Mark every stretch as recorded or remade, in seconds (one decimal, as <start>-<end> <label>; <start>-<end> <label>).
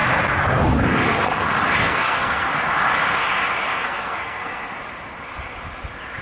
0.0-1.8 recorded; 1.8-2.5 remade; 2.5-3.7 recorded; 3.7-4.8 remade; 4.8-6.2 recorded